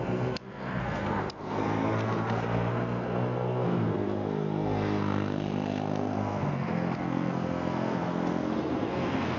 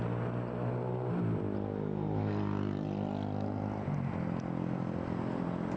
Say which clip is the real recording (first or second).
second